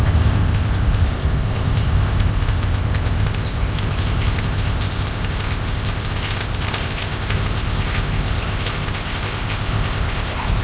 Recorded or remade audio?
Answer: remade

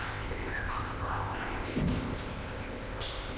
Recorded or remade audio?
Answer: remade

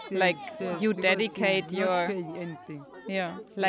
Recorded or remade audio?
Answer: recorded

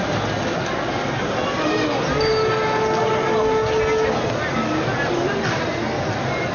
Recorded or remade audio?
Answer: recorded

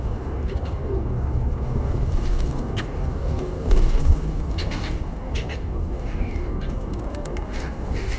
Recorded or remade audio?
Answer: remade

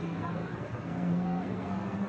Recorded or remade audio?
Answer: remade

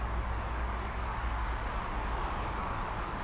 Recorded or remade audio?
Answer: remade